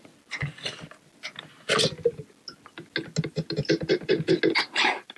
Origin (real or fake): real